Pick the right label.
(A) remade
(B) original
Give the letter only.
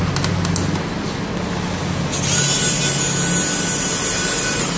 B